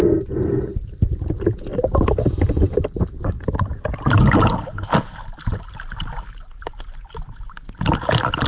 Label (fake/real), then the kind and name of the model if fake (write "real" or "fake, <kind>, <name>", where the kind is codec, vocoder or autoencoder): real